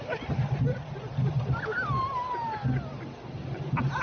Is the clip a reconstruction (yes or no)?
no